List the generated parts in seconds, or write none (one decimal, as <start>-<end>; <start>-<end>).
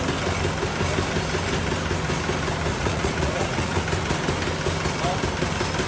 2.7-3.8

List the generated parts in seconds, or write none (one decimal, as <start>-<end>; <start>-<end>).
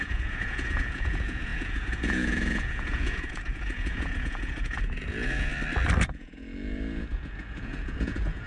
0.0-5.5; 6.0-8.5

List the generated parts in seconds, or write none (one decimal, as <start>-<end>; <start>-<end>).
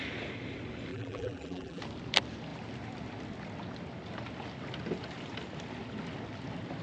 0.9-1.8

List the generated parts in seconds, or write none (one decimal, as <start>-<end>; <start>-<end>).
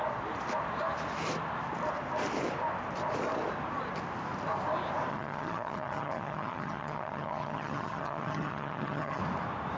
5.1-9.2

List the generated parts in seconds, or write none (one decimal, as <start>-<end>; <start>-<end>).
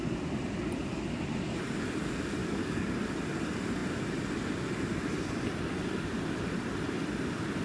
2.4-3.0